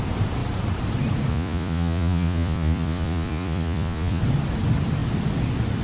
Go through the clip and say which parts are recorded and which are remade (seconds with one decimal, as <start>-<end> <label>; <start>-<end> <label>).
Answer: 0.0-1.3 recorded; 1.3-4.2 remade; 4.2-5.8 recorded